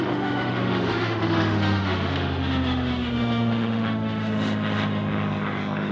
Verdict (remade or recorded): remade